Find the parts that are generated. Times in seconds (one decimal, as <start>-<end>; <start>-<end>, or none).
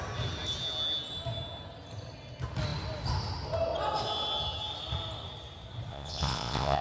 5.9-6.8